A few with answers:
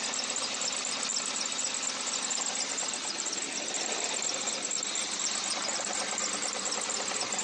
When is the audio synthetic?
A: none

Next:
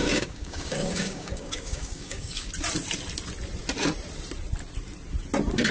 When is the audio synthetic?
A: 0.0-2.5 (codec, DAC)

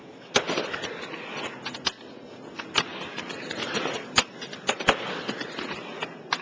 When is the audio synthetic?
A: 2.9-5.6 (vocoder, BigVGAN v2)

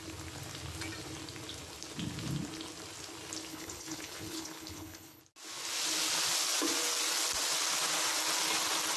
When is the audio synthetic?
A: 3.5-5.2 (codec, HILCodec)